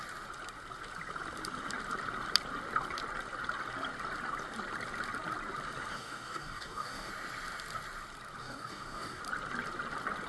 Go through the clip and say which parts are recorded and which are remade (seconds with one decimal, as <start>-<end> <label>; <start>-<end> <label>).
0.0-5.9 recorded; 5.9-7.1 remade; 7.1-8.4 recorded; 8.4-9.2 remade; 9.2-10.3 recorded